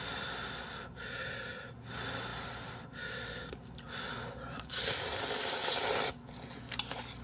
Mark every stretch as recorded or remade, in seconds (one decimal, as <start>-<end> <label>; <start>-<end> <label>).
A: 0.0-7.2 recorded